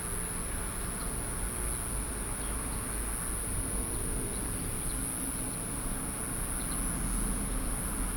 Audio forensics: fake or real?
real